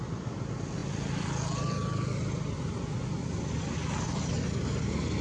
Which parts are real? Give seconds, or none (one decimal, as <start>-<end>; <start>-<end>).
0.8-3.9